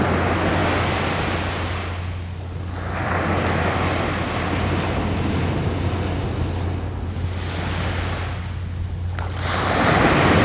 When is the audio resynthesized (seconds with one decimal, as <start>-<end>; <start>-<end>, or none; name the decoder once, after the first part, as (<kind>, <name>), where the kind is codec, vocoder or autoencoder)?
none